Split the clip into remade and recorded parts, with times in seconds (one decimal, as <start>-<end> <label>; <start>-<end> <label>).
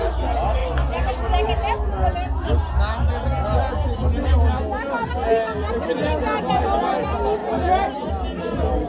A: 0.0-8.9 recorded